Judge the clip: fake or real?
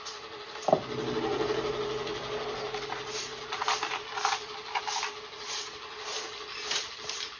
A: real